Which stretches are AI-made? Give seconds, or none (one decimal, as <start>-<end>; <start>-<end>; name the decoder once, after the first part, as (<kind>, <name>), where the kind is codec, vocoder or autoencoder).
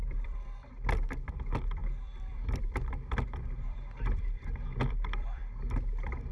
0.0-5.4 (vocoder, BigVGAN v2)